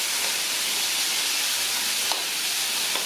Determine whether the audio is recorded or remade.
recorded